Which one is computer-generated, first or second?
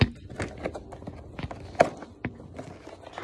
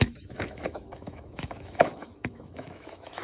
second